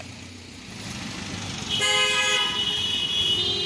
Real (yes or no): yes